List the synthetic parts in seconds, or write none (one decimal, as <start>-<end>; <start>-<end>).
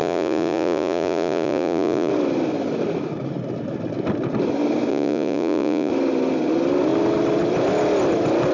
0.0-2.1; 4.9-5.9